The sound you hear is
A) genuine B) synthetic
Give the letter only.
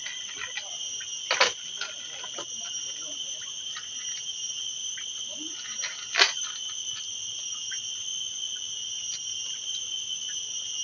A